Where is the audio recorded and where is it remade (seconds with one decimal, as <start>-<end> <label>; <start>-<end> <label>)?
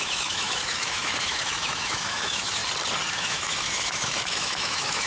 0.0-2.6 remade; 2.6-3.1 recorded; 3.1-5.1 remade